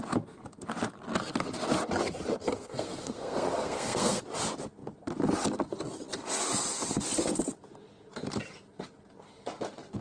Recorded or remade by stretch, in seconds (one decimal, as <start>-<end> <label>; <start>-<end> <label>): 0.0-2.4 recorded; 2.4-4.2 remade; 4.2-10.0 recorded